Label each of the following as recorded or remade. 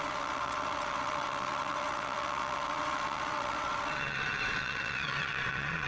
remade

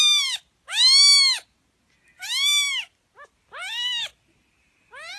recorded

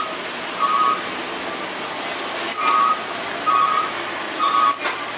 recorded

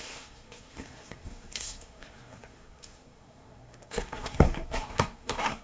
remade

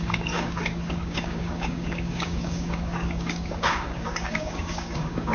remade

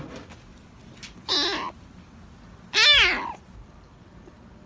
recorded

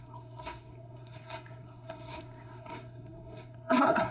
remade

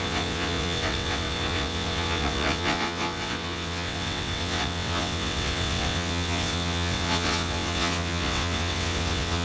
remade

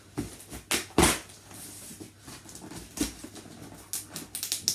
recorded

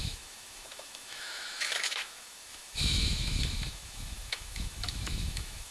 remade